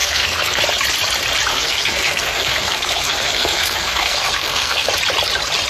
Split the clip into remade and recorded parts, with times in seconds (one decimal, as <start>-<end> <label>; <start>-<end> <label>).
0.0-0.6 remade; 0.6-1.5 recorded; 1.5-4.9 remade; 4.9-5.7 recorded